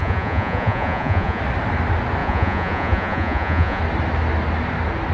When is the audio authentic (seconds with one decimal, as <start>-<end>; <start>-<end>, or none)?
1.4-2.2; 3.8-5.1

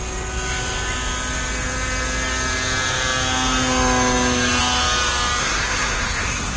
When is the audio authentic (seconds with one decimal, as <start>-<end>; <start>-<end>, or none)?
0.0-5.4

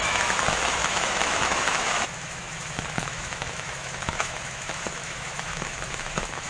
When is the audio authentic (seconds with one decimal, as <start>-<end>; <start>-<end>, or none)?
none

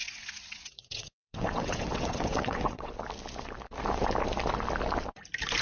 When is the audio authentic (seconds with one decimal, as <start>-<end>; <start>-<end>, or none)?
2.9-5.6